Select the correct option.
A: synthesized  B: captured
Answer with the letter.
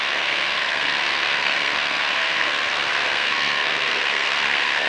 A